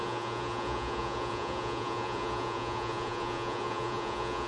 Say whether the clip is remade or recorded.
remade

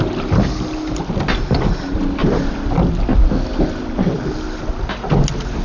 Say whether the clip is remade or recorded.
recorded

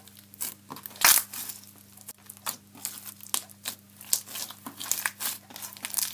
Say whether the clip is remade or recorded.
recorded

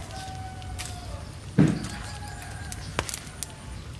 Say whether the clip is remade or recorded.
recorded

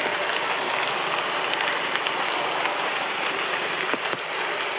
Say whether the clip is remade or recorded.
recorded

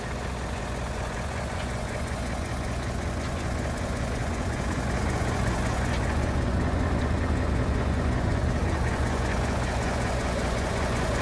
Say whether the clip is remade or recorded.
remade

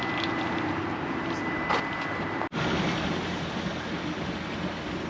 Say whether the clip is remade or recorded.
recorded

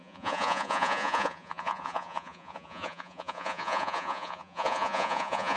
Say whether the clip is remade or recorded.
remade